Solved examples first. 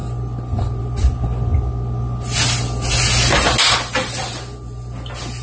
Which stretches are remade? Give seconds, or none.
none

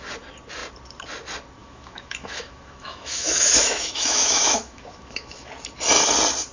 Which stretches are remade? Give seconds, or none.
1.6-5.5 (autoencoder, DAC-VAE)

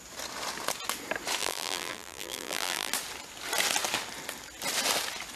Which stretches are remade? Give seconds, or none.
1.4-2.9 (vocoder, BigVGAN v2)

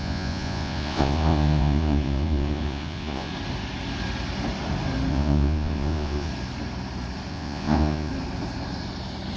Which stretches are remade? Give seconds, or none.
0.0-3.3 (vocoder, Vocos); 5.1-6.3; 7.3-8.1